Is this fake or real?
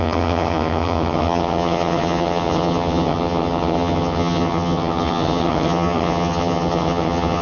fake